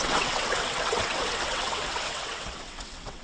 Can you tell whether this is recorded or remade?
remade